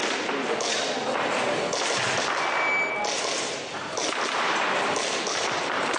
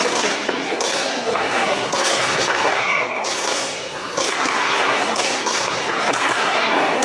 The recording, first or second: first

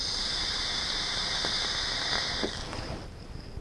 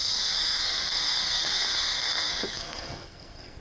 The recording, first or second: first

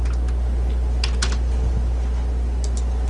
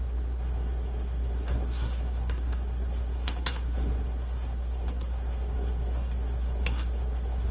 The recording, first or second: first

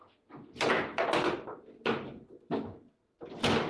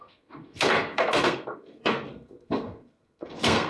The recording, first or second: first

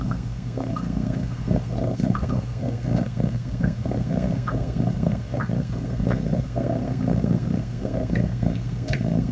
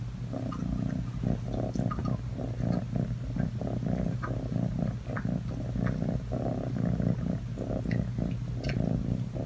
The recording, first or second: second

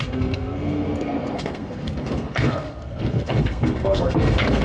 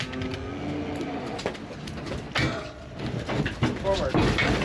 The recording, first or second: second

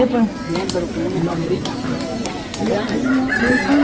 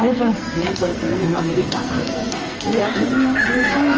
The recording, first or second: first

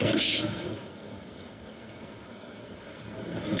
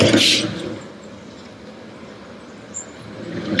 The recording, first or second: second